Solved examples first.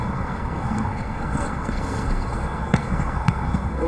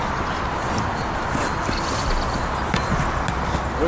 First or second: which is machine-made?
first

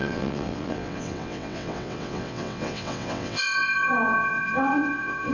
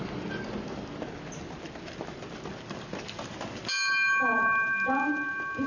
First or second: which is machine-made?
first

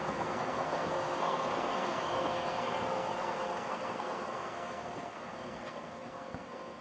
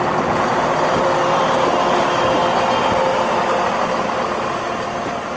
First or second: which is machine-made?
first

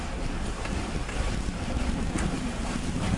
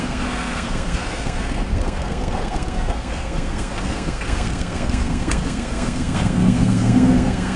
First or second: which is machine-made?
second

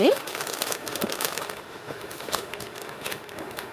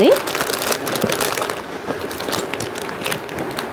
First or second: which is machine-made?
first